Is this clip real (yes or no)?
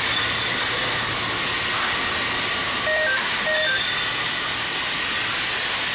yes